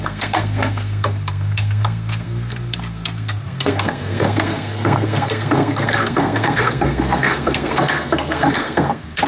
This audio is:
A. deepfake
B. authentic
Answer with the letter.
A